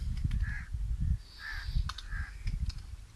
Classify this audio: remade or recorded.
recorded